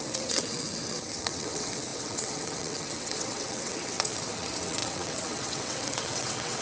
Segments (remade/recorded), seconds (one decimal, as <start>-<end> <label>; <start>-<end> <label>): 0.0-6.6 remade